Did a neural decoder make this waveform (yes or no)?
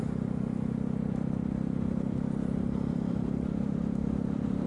yes